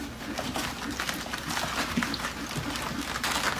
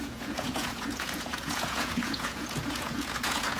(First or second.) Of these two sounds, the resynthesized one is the second